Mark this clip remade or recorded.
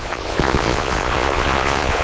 remade